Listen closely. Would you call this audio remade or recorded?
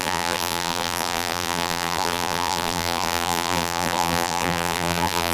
remade